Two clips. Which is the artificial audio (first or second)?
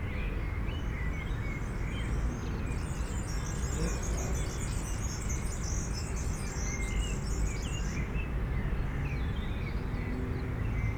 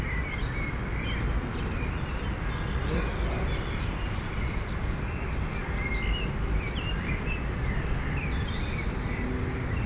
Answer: second